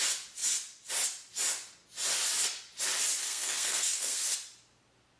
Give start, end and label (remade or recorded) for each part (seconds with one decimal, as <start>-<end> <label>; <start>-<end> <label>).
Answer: 0.0-3.2 recorded; 3.2-4.2 remade; 4.2-5.2 recorded